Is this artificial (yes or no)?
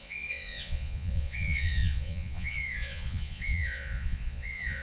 yes